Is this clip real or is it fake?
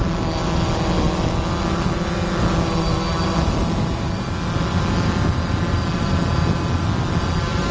real